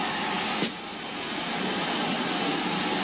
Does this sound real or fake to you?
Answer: real